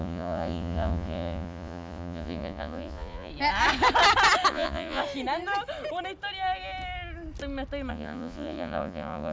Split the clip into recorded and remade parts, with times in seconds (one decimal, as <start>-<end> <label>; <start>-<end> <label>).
0.0-3.3 remade; 3.3-4.5 recorded; 4.5-5.0 remade; 5.0-7.9 recorded; 7.9-9.3 remade